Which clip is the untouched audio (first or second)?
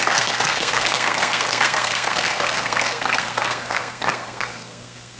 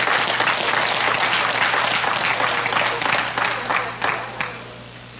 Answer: second